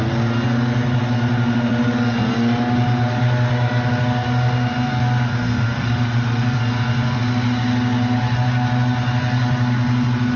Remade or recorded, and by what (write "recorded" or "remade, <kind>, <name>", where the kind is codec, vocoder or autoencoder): recorded